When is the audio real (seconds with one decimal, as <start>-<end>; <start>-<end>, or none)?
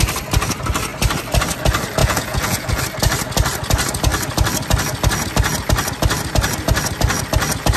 0.0-2.0; 2.8-7.8